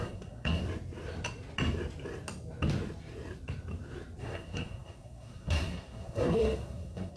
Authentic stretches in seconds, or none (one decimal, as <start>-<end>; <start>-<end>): 0.6-4.2